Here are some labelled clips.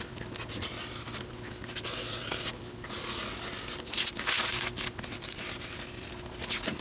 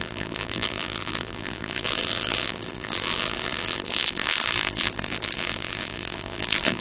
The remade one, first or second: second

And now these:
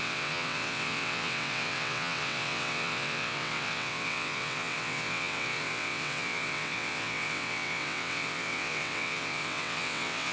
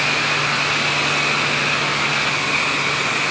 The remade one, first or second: first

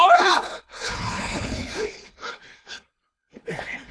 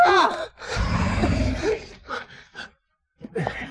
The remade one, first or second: first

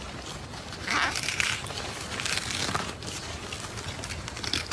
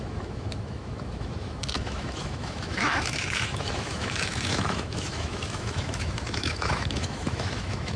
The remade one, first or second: second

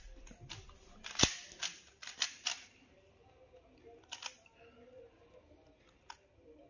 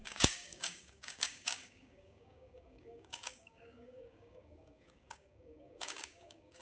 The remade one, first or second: second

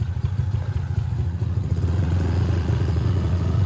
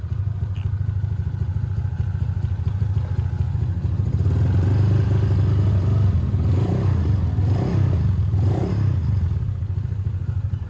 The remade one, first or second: first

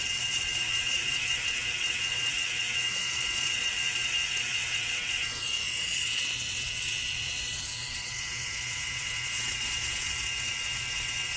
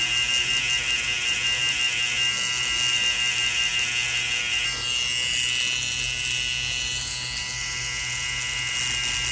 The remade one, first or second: first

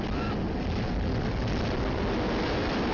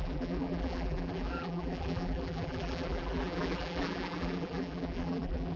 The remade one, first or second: second